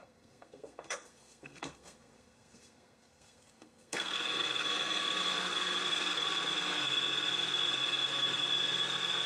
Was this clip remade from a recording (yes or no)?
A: yes